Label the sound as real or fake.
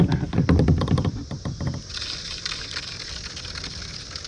real